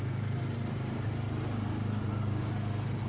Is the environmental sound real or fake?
real